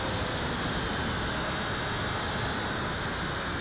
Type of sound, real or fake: real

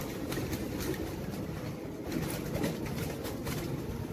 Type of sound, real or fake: real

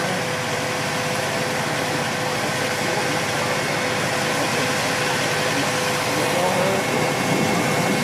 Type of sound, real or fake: real